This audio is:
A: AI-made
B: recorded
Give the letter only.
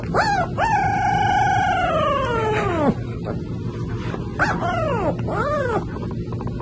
B